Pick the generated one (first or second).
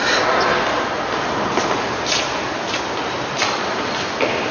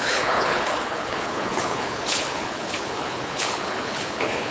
second